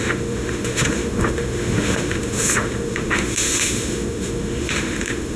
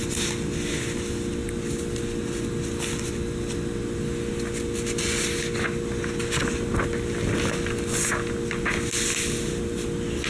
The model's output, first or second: first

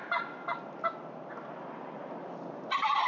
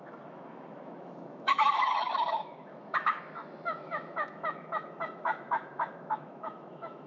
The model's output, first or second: second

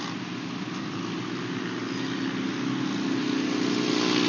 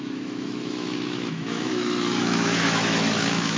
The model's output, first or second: second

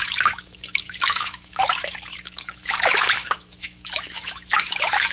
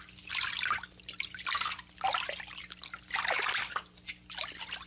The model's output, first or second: first